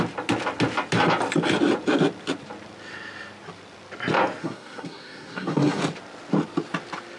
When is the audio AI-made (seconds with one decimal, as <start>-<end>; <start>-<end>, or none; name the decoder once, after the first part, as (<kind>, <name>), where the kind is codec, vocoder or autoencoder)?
4.4-5.8 (codec, SNAC)